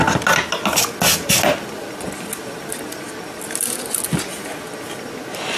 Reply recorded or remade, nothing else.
recorded